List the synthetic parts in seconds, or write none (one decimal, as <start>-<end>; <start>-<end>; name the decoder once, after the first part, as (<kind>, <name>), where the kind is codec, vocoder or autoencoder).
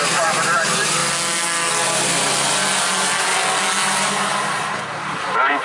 0.0-1.0 (vocoder, BigVGAN v2); 4.4-5.6